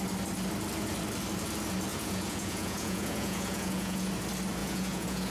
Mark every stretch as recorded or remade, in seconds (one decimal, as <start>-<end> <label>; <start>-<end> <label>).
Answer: 0.0-1.9 recorded; 1.9-4.1 remade; 4.1-4.6 recorded; 4.6-5.3 remade